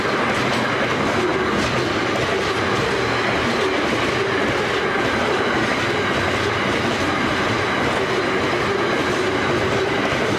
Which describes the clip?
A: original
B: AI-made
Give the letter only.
A